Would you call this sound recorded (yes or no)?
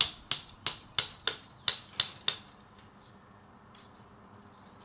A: yes